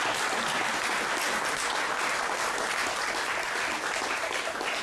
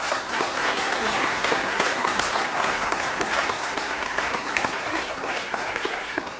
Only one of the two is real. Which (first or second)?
first